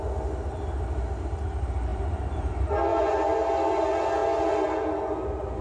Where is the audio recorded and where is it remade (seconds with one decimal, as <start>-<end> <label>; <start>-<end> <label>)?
0.0-1.9 recorded; 1.9-2.5 remade; 2.5-5.6 recorded